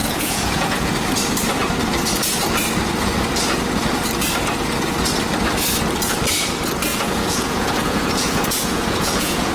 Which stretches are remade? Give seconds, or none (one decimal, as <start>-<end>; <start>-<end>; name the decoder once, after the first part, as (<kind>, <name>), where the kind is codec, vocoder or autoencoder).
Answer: 0.0-0.9 (vocoder, Vocos); 6.9-9.5

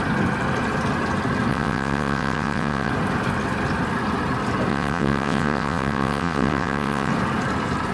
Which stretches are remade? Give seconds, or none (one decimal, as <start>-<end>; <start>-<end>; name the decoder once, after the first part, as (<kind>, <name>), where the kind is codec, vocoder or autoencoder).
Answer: 1.5-2.9 (vocoder, WaveNeXt); 4.7-7.1

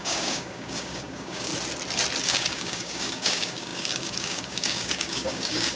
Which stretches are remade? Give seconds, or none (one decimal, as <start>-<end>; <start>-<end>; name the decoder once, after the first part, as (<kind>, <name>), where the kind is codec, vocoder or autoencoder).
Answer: 0.0-1.5 (codec, DAC); 2.2-5.8